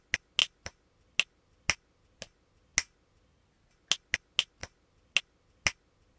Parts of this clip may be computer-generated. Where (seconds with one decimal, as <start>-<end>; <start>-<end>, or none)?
none